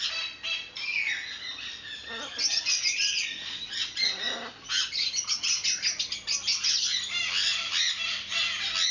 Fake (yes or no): no